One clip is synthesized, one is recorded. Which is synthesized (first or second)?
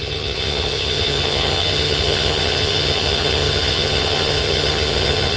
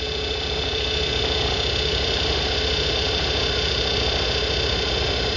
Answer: first